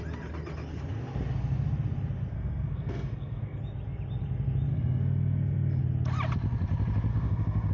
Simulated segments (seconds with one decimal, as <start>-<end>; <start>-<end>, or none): 2.3-3.6; 4.7-5.8; 7.1-7.7